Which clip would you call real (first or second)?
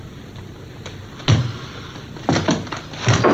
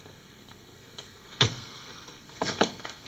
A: first